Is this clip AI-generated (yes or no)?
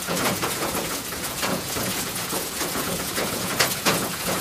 yes